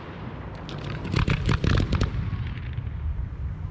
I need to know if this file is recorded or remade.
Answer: recorded